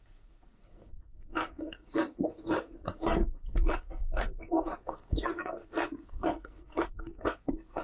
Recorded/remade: remade